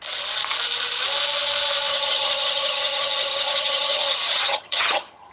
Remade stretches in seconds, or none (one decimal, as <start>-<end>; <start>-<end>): 1.9-5.3

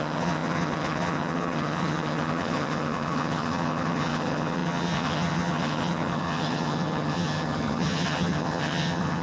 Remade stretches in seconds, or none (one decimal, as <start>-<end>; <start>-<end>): 0.0-9.2

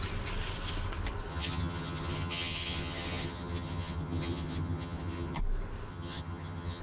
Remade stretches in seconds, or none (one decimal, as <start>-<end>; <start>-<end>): 1.3-5.4; 5.9-6.8

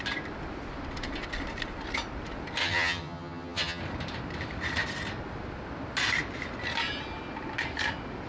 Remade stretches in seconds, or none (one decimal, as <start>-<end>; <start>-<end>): 2.6-3.8

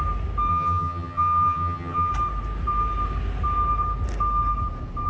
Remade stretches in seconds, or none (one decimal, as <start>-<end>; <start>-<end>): 0.5-2.1

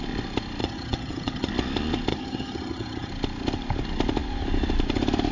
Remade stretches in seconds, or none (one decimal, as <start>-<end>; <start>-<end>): 0.6-1.5; 2.1-3.1